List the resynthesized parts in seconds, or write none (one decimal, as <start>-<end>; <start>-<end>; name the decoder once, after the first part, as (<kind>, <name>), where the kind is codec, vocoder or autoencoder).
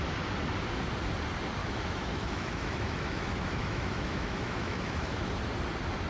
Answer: 1.6-5.3 (autoencoder, DAC-VAE)